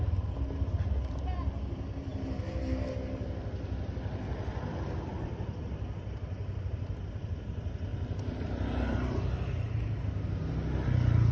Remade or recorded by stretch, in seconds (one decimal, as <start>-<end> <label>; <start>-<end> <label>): 0.0-5.1 recorded; 5.1-6.7 remade; 6.7-11.3 recorded